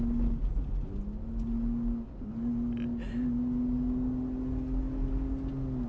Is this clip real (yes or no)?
yes